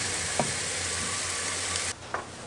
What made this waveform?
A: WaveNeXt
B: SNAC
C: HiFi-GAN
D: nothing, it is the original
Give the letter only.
D